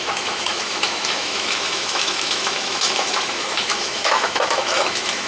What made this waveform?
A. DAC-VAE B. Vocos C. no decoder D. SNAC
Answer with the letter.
A